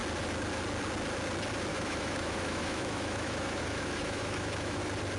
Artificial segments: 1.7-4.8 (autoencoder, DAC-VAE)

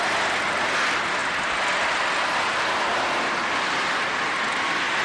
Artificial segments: none

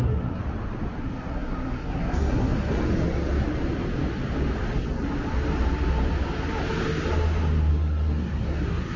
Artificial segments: 0.0-0.4 (codec, SNAC); 1.0-2.8; 7.7-9.0

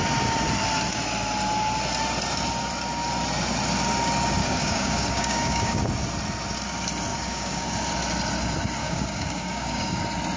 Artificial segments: 4.4-5.8 (codec, DAC); 7.1-7.7; 8.8-10.0

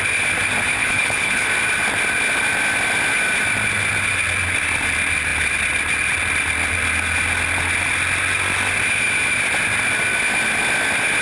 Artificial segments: 0.8-1.5 (codec, HILCodec)

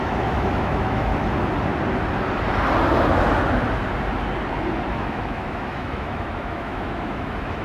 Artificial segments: 0.0-1.1 (autoencoder, DAC-VAE); 4.9-7.6

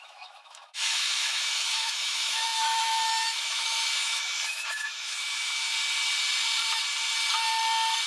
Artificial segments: 0.0-5.7 (autoencoder, DAC-VAE)

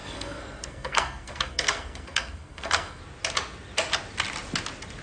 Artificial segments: 0.0-3.0 (codec, SNAC)